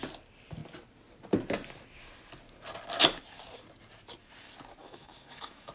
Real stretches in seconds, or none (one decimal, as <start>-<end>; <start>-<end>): 0.0-4.8